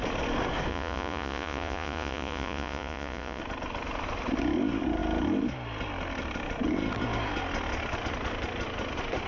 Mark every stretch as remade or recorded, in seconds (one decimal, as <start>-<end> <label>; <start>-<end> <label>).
0.0-0.7 recorded; 0.7-3.4 remade; 3.4-9.3 recorded